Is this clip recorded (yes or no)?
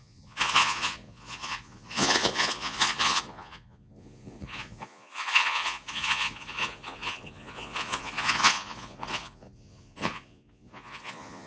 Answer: no